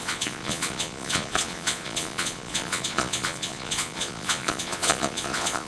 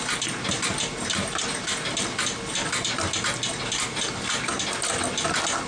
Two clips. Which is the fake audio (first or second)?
first